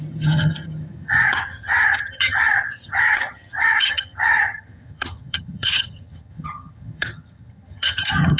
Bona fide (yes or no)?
no